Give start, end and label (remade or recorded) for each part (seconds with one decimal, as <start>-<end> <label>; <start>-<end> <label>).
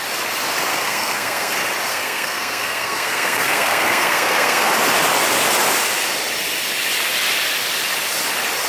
0.0-0.7 recorded; 0.7-1.5 remade; 1.5-1.9 recorded; 1.9-4.7 remade; 4.7-8.7 recorded